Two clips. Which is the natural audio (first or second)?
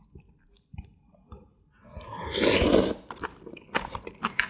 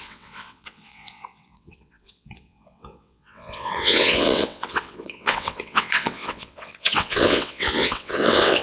first